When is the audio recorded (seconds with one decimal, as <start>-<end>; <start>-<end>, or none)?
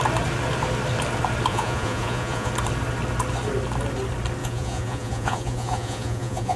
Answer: 0.0-1.5; 2.5-4.4